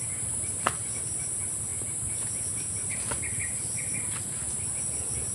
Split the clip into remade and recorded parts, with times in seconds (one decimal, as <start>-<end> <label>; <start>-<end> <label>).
0.0-5.3 recorded